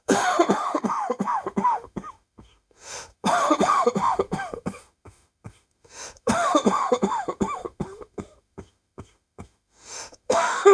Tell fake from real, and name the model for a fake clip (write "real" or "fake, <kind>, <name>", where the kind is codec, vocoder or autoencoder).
fake, autoencoder, DAC-VAE